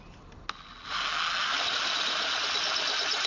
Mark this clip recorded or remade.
recorded